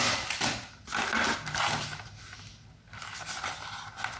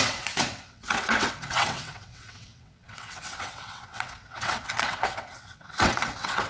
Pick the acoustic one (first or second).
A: first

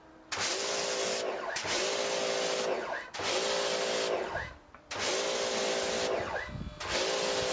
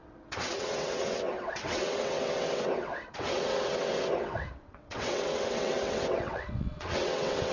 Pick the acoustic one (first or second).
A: first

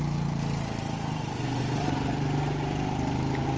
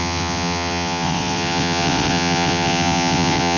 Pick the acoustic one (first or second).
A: first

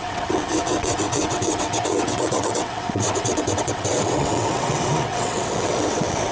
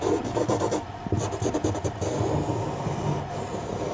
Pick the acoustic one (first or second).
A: second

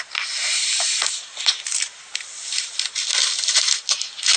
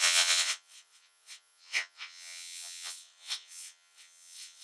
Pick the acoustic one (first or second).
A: first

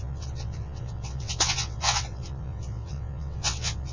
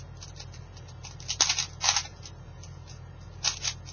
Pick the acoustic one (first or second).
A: second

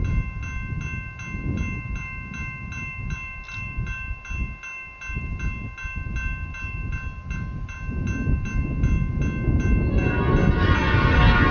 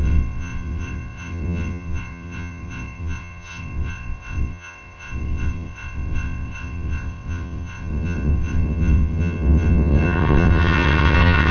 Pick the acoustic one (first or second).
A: first